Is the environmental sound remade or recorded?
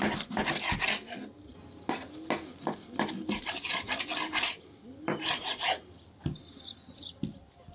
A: recorded